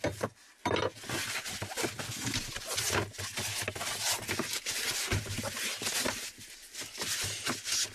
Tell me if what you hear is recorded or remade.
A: recorded